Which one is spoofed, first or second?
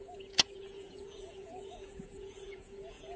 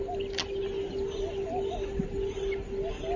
first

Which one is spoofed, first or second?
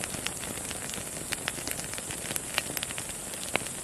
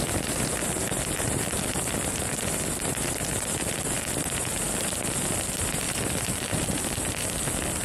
second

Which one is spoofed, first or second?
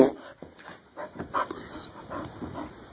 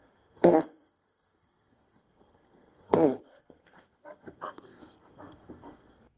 second